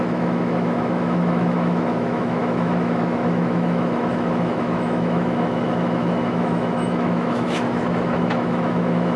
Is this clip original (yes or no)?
no